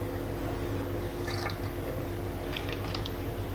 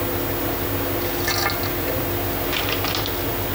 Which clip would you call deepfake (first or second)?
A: first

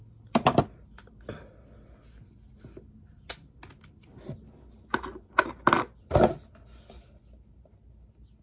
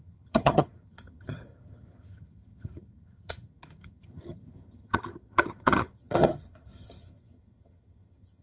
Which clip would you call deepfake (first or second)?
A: second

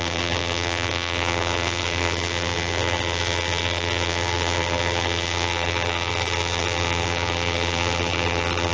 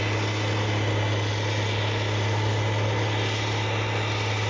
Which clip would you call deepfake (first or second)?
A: first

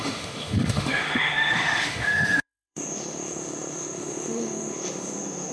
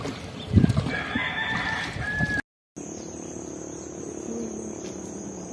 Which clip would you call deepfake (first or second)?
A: first